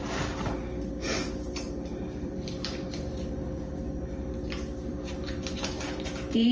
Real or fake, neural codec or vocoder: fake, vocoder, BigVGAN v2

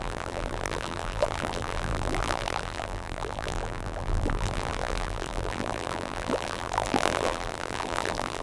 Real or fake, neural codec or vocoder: fake, vocoder, BigVGAN v2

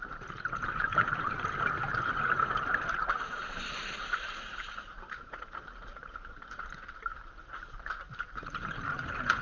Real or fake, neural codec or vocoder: fake, vocoder, BigVGAN v2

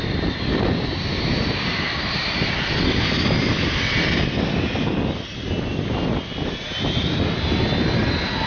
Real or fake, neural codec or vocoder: fake, vocoder, BigVGAN v2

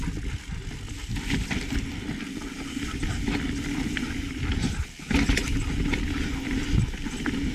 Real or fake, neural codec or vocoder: real